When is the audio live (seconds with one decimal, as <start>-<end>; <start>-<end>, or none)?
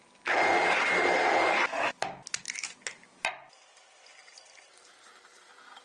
0.0-5.8